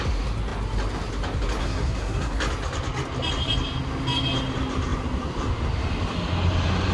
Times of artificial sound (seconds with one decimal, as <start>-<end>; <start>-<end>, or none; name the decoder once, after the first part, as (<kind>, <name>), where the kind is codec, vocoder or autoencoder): 1.6-2.4 (codec, SNAC)